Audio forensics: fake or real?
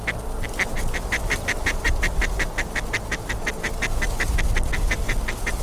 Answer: real